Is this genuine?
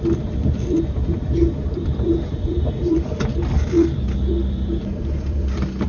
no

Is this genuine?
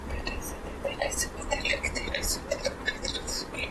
no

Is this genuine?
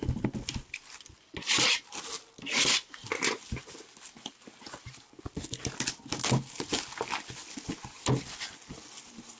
yes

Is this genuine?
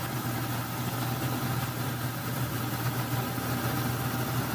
yes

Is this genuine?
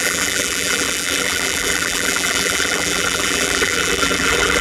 no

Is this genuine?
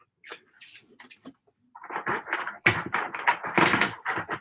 no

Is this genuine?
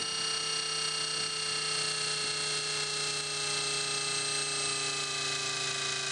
yes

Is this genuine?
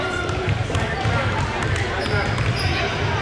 yes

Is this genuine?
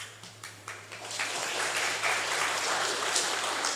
no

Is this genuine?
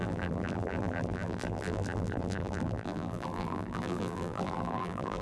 no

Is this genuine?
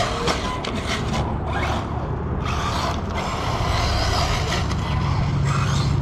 yes